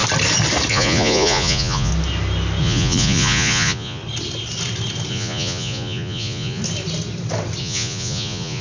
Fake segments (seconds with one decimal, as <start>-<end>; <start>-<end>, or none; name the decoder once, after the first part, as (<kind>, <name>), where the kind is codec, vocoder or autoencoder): 0.7-1.9 (vocoder, Vocos); 2.6-4.0; 5.1-6.6; 7.6-8.6